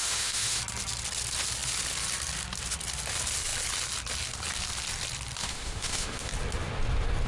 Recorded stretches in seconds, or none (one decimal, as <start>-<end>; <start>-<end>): 0.6-5.4; 6.3-7.3